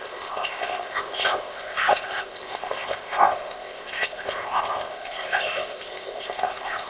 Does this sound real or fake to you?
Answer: fake